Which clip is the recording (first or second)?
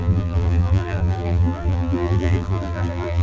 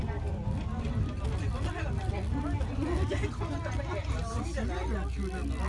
second